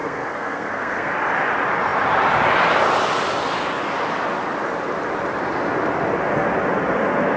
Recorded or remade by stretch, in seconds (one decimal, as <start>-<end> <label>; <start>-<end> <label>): 0.0-1.1 remade; 1.1-7.4 recorded